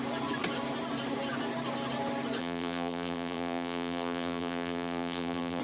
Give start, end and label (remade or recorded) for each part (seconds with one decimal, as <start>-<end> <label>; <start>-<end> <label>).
0.0-2.4 recorded; 2.4-5.6 remade